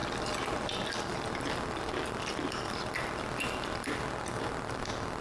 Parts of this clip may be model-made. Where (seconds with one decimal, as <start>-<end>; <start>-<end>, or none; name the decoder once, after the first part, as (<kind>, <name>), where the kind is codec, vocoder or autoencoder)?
none

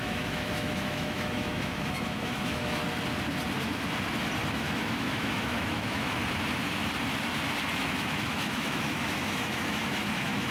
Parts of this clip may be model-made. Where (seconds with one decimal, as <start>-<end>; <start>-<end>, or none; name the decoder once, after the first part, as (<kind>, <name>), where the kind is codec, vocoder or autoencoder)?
0.0-2.8 (autoencoder, DAC-VAE); 4.5-6.2; 7.7-10.5